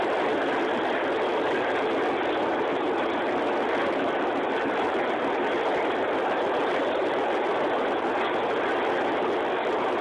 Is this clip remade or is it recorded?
recorded